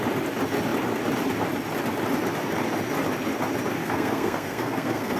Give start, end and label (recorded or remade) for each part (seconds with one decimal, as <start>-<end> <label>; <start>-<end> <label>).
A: 0.0-3.8 recorded; 3.8-5.2 remade